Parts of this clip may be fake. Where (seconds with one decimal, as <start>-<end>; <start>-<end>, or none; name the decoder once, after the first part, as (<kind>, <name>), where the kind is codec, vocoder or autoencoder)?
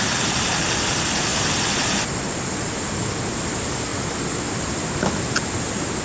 none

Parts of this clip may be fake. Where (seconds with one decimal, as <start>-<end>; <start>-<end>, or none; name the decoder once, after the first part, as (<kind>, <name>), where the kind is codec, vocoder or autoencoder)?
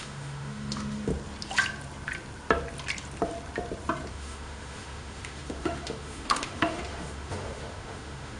0.0-1.1 (autoencoder, DAC-VAE); 4.1-8.4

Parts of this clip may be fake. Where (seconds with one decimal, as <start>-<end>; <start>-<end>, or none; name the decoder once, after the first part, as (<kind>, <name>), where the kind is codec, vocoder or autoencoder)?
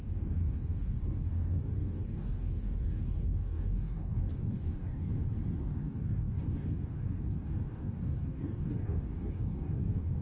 0.0-5.1 (codec, DAC); 5.6-10.2